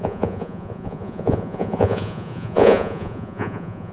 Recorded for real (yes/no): no